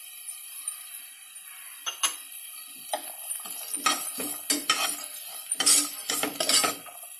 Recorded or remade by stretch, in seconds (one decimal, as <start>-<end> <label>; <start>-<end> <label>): 0.0-7.2 recorded